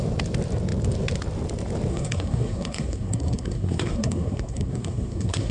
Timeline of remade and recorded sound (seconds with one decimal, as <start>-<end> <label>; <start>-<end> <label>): 0.0-1.9 recorded; 1.9-5.5 remade